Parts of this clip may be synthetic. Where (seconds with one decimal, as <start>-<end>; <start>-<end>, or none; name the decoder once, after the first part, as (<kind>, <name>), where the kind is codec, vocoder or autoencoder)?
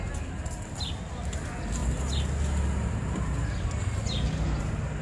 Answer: none